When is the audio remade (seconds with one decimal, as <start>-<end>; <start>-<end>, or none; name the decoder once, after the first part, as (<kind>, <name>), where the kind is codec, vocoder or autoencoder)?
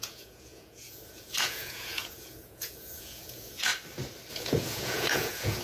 0.0-3.7 (vocoder, Vocos); 4.3-5.6